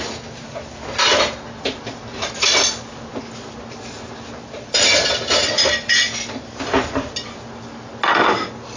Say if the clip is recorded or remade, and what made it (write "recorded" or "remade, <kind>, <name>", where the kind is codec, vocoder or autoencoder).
recorded